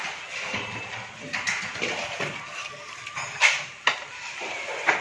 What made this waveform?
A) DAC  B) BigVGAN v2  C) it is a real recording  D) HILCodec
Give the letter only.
C